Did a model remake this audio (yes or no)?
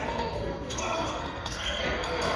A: yes